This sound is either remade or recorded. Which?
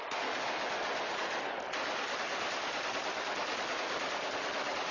recorded